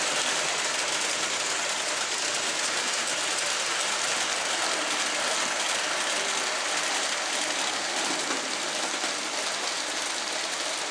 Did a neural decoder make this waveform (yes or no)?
no